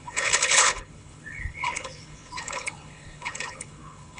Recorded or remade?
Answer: remade